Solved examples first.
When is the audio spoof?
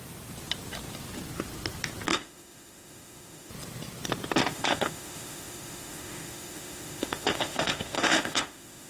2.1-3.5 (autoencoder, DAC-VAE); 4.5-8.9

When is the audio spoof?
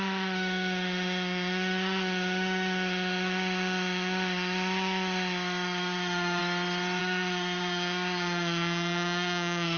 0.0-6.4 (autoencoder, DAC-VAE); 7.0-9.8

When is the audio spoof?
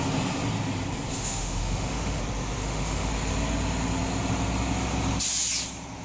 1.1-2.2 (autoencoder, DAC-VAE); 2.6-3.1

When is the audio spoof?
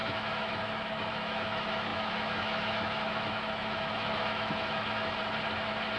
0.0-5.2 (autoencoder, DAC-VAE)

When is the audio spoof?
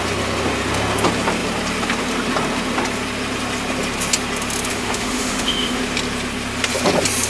4.7-5.8 (autoencoder, DAC-VAE)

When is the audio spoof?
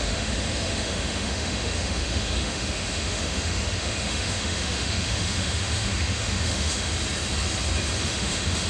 0.0-6.9 (autoencoder, DAC-VAE); 8.0-8.7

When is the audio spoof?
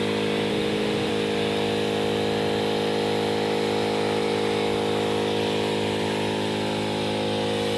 0.5-1.1 (autoencoder, DAC-VAE)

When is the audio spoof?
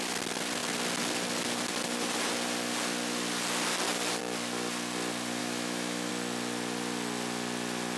5.4-6.1 (autoencoder, DAC-VAE)